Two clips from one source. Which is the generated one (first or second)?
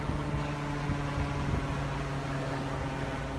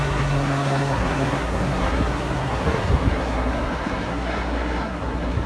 second